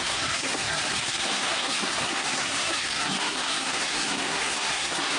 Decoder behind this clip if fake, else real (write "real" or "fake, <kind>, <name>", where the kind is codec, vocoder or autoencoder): fake, codec, SNAC